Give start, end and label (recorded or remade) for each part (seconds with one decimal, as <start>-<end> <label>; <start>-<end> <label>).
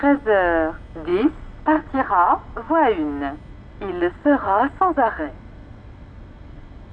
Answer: 0.0-1.1 recorded; 1.1-2.7 remade; 2.7-3.5 recorded; 3.5-6.9 remade